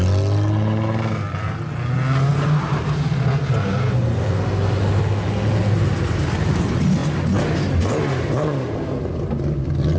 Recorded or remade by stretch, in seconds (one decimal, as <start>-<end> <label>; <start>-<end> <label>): 0.0-10.0 recorded